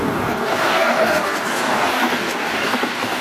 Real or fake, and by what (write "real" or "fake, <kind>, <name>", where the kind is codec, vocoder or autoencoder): fake, codec, DAC